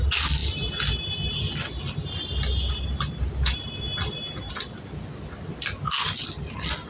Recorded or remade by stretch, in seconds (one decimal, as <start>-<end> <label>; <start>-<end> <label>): 0.0-6.9 recorded